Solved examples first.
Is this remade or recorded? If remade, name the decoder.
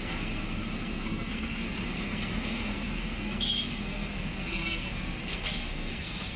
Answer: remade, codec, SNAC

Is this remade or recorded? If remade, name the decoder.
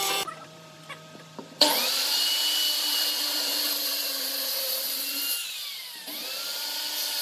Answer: remade, vocoder, BigVGAN v2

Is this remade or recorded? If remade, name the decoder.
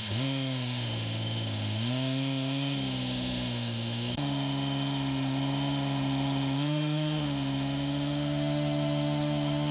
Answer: remade, autoencoder, DAC-VAE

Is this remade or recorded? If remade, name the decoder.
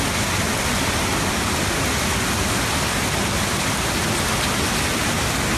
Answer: recorded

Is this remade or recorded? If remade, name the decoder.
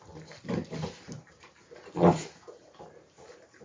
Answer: recorded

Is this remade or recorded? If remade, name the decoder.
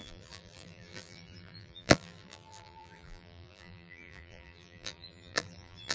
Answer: remade, vocoder, BigVGAN v2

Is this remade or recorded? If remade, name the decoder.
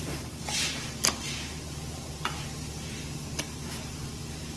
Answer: remade, vocoder, BigVGAN v2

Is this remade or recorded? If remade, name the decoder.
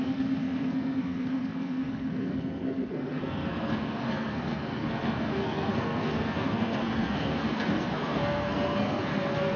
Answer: remade, codec, SNAC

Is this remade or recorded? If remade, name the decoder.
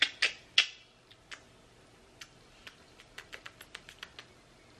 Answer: recorded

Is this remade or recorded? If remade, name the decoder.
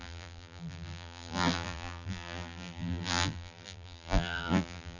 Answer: remade, vocoder, BigVGAN v2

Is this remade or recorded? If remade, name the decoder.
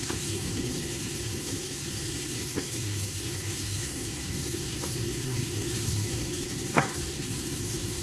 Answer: remade, codec, SNAC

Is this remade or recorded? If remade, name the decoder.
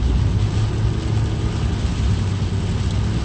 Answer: recorded